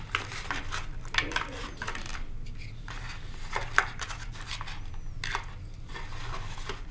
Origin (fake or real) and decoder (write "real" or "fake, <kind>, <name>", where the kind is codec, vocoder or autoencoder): real